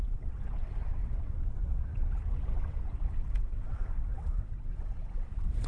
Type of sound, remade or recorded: remade